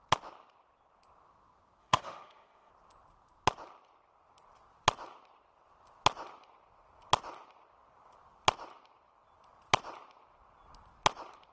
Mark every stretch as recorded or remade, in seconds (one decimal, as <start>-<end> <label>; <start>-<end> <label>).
0.0-1.8 recorded; 1.8-2.7 remade; 2.7-11.5 recorded